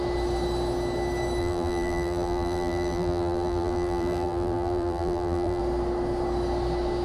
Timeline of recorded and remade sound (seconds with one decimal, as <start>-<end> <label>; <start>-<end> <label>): 0.0-1.4 recorded; 1.4-5.6 remade; 5.6-7.0 recorded